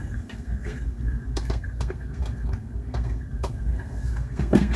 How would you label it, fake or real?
fake